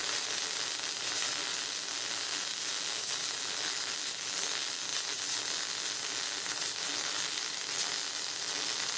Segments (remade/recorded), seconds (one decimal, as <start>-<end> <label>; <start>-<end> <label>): 0.0-1.0 remade; 1.0-9.0 recorded